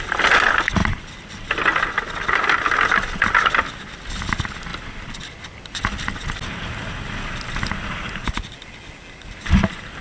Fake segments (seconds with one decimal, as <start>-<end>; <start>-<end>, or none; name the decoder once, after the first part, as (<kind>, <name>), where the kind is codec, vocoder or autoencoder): none